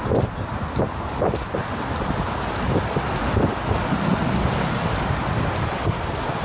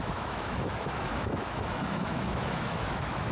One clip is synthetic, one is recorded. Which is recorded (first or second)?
first